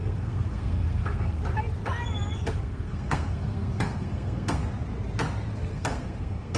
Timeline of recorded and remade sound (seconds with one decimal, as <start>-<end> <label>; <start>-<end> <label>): 0.0-1.4 remade; 1.4-2.5 recorded; 2.5-4.6 remade; 4.6-5.7 recorded; 5.7-6.6 remade